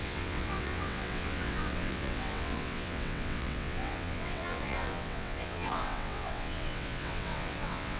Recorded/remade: remade